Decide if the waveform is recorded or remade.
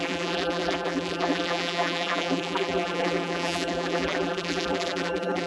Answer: remade